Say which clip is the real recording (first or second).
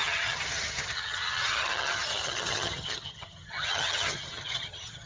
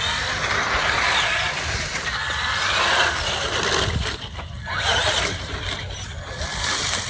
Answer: second